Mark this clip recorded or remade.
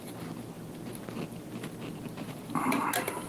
recorded